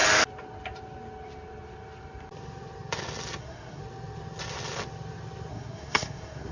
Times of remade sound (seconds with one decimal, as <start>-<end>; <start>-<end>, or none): 3.4-3.8; 5.5-6.5